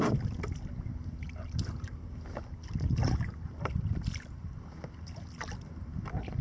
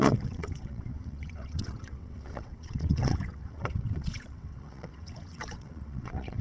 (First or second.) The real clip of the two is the first